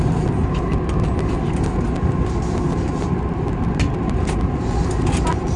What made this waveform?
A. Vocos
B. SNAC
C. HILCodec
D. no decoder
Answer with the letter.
D